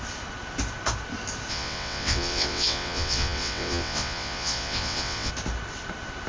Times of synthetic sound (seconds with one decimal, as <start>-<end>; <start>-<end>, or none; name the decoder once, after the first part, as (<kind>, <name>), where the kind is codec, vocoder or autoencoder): 1.5-5.3 (vocoder, WaveNeXt)

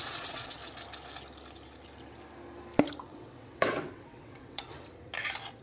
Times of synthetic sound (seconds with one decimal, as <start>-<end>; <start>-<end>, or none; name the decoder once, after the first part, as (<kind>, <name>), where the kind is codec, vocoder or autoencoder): 0.0-0.6 (vocoder, WaveNeXt); 3.0-4.7